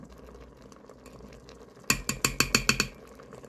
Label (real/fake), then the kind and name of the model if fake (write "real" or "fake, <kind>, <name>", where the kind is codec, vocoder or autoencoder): real